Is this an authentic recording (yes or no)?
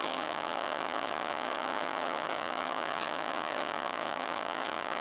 no